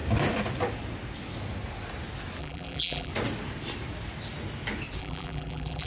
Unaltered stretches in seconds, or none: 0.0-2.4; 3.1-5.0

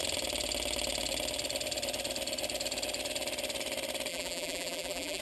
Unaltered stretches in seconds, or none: 0.0-4.1

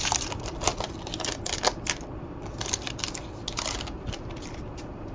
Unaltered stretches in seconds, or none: 0.7-3.8

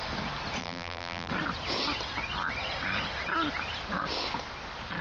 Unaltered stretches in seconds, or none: 0.0-0.6; 1.3-5.0